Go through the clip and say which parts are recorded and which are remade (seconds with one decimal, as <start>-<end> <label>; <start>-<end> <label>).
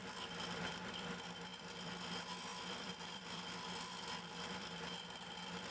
0.0-1.1 remade; 1.1-1.5 recorded; 1.5-2.0 remade; 2.0-2.5 recorded; 2.5-5.7 remade